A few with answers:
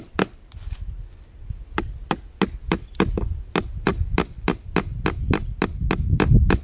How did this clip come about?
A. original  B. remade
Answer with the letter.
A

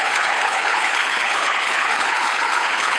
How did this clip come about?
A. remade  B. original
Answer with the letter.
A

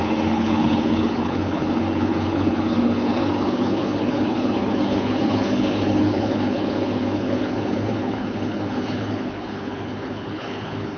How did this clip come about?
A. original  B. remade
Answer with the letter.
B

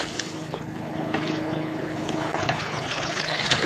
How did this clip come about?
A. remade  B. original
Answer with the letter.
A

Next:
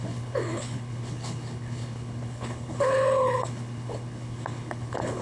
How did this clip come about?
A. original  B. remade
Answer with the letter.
B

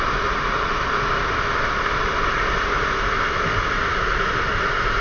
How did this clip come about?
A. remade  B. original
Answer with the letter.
B